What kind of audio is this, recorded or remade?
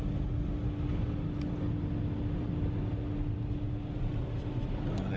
recorded